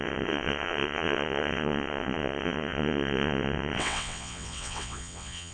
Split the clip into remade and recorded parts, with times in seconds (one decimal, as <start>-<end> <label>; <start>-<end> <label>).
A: 0.0-5.5 remade